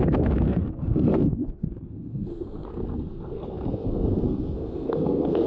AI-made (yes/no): yes